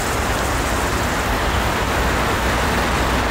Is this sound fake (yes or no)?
no